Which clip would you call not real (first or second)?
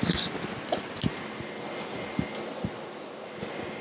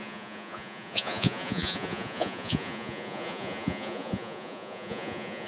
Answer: second